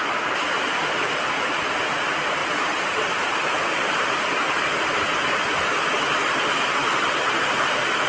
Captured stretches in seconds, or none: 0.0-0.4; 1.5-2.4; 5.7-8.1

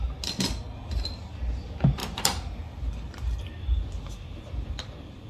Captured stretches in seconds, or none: 0.0-2.0

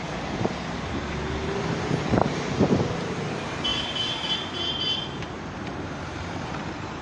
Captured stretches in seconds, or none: none

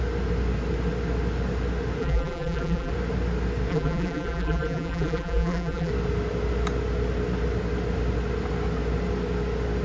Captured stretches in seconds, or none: 0.0-2.0; 2.9-3.7; 5.9-9.8

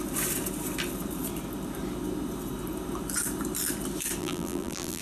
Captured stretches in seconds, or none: 0.0-4.2

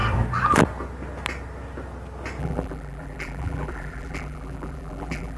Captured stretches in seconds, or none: 0.0-2.4

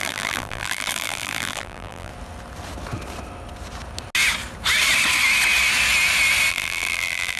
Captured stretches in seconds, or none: 2.1-6.5